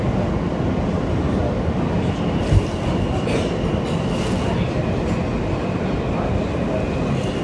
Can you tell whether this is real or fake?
real